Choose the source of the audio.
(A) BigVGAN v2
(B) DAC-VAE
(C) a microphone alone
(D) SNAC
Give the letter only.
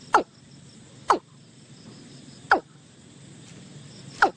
C